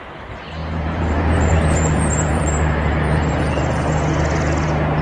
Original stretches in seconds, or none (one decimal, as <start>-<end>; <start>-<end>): 0.0-0.6; 3.6-5.0